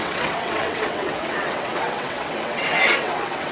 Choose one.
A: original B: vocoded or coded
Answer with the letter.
B